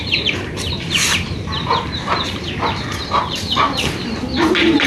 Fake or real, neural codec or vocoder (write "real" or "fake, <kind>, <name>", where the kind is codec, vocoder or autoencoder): fake, vocoder, BigVGAN v2